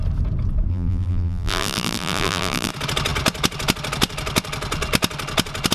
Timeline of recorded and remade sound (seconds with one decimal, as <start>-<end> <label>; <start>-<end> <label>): 0.0-0.7 recorded; 0.7-2.7 remade; 2.7-5.7 recorded